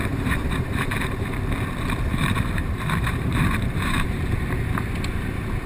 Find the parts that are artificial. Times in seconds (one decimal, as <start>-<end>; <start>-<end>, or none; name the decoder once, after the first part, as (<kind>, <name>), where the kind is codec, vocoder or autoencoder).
0.0-1.4 (vocoder, BigVGAN v2); 2.1-4.6